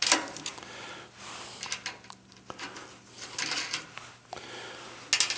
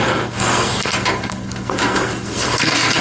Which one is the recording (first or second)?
first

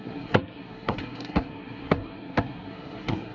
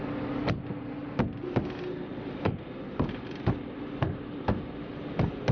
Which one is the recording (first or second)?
second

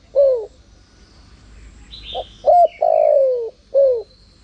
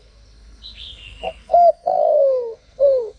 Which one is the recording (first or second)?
first